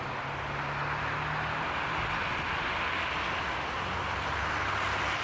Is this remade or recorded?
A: recorded